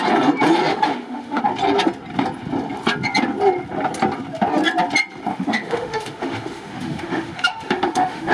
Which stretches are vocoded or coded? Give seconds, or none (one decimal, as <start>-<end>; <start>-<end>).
0.7-1.4; 5.3-8.3